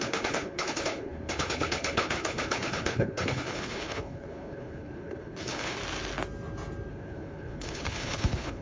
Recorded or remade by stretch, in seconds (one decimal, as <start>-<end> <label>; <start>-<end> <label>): 0.0-5.8 remade; 5.8-6.9 recorded; 6.9-8.6 remade